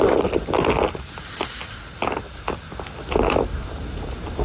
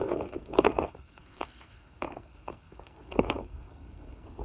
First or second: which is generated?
second